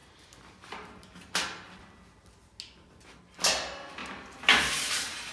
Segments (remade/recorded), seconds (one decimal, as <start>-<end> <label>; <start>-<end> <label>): 0.0-5.3 recorded